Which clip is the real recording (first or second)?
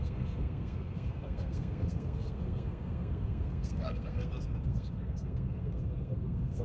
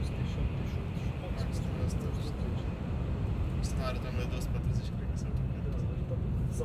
second